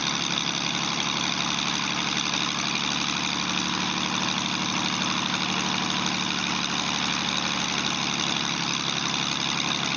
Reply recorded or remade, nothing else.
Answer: recorded